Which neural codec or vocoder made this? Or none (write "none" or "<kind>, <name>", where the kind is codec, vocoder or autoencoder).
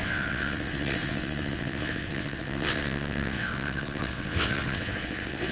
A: vocoder, WaveNeXt